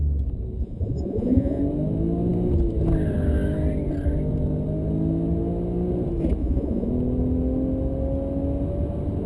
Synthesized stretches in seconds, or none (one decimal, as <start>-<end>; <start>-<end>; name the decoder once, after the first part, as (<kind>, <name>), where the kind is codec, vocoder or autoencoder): 0.6-1.6 (vocoder, Vocos); 6.4-6.9